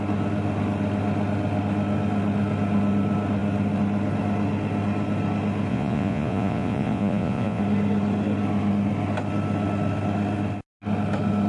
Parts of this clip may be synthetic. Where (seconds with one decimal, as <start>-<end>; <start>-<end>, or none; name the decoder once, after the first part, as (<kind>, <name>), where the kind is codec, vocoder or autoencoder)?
5.7-7.6 (vocoder, Vocos)